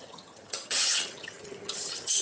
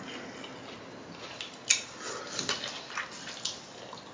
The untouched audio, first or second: second